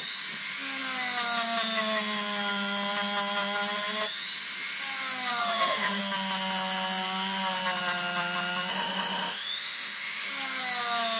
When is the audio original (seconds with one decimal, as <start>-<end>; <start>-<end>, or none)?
0.0-5.4; 6.0-8.7; 10.3-11.2